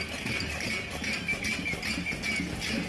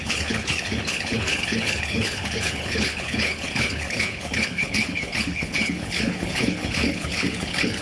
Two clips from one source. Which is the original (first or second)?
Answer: first